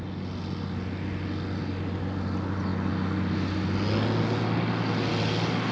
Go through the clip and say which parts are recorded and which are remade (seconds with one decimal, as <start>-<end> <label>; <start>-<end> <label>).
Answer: 0.0-5.7 recorded